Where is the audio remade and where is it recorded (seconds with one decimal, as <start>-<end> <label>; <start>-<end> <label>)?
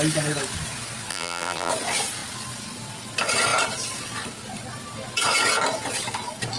0.0-1.1 recorded; 1.1-1.7 remade; 1.7-6.6 recorded